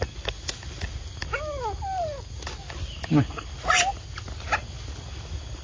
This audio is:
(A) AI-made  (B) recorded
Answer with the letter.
B